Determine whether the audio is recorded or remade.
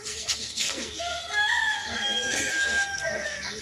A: remade